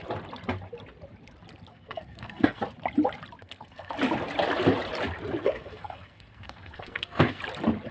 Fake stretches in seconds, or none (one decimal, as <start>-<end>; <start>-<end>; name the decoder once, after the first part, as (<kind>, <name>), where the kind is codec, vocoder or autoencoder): 1.7-2.6 (codec, SNAC); 3.4-3.9; 5.4-7.4